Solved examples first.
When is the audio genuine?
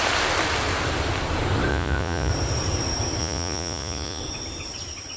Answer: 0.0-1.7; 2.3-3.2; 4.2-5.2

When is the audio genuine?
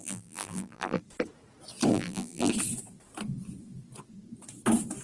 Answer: 1.0-1.9; 2.5-5.0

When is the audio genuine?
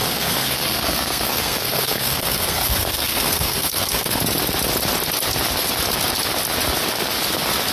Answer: 4.2-7.7